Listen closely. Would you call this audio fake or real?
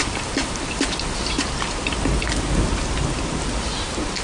real